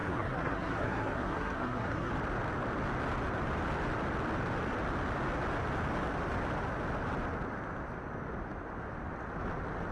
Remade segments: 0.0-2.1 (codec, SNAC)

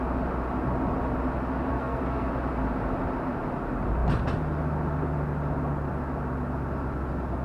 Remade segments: 1.7-2.3 (codec, SNAC)

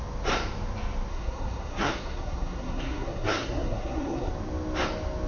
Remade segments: 1.1-4.3 (codec, SNAC)

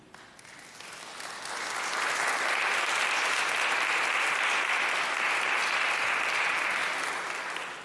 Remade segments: 5.6-6.2 (vocoder, BigVGAN v2); 6.8-7.8

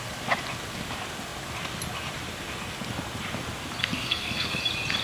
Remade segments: 3.8-4.6 (codec, SNAC)

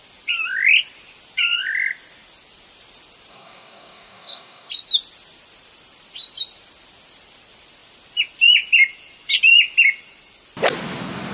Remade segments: 3.3-4.7 (codec, DAC)

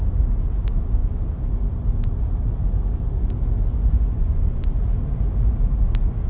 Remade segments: 3.7-4.7 (vocoder, Vocos)